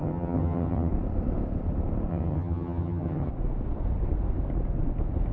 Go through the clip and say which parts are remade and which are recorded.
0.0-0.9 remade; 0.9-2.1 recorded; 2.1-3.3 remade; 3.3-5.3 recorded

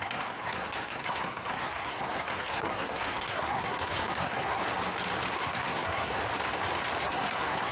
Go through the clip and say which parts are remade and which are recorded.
0.0-4.6 remade; 4.6-5.3 recorded; 5.3-6.2 remade; 6.2-7.0 recorded; 7.0-7.7 remade

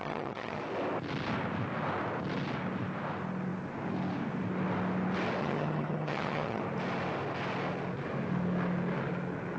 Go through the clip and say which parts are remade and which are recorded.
0.0-0.6 remade; 0.6-5.4 recorded; 5.4-6.6 remade; 6.6-9.6 recorded

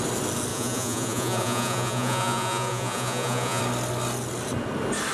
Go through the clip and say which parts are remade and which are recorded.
0.0-0.5 recorded; 0.5-3.6 remade; 3.6-5.1 recorded